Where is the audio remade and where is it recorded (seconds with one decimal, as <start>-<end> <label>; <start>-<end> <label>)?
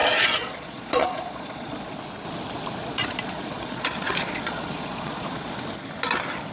0.0-2.0 remade; 2.0-2.8 recorded; 2.8-5.5 remade; 5.5-6.5 recorded